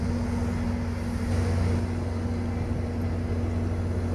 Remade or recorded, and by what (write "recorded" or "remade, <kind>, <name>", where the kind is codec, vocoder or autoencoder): recorded